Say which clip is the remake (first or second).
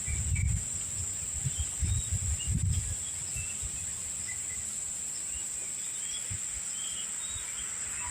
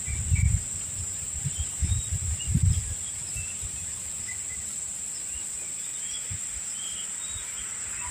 second